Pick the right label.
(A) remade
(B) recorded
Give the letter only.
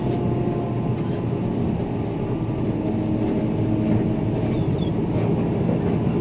B